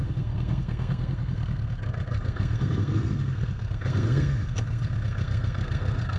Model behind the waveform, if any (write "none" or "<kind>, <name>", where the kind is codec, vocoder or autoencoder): codec, SNAC